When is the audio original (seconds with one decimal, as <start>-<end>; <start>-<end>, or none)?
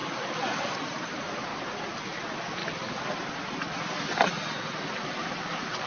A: 0.0-0.6; 1.5-2.2; 2.6-4.8